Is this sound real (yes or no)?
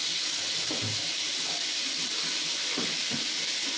yes